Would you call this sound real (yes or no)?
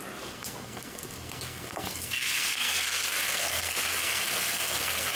no